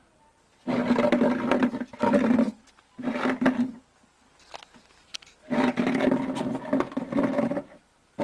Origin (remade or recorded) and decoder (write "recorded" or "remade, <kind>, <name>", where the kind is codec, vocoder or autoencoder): recorded